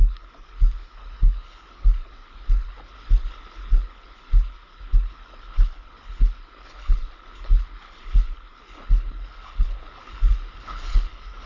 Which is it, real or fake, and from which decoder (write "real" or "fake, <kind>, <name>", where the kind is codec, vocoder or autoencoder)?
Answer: fake, codec, HILCodec